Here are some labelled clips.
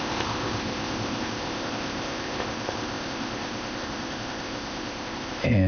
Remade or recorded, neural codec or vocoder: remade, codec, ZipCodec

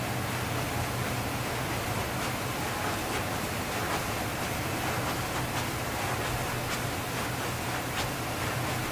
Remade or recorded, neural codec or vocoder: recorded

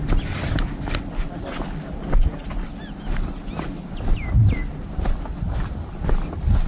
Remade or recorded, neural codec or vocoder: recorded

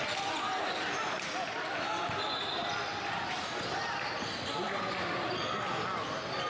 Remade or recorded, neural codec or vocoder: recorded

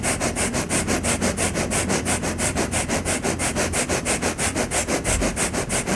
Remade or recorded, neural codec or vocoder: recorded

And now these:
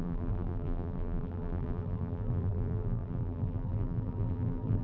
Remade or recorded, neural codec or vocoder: remade, vocoder, BigVGAN v2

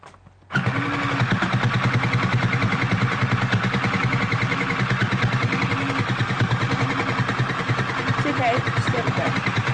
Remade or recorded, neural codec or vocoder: recorded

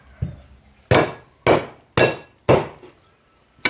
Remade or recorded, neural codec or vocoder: recorded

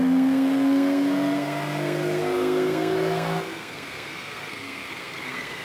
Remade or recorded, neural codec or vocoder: remade, codec, SNAC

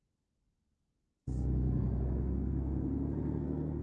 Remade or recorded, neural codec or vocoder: remade, codec, SNAC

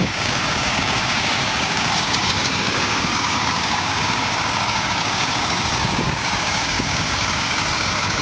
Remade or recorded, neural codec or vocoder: remade, codec, DAC